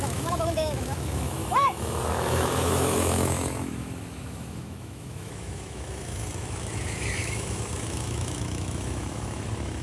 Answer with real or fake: fake